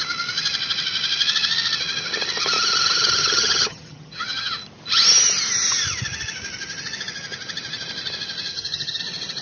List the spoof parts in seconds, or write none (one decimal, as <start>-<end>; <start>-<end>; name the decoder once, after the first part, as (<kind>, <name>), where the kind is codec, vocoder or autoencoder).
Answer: 3.2-4.5 (vocoder, HiFi-GAN); 8.5-9.0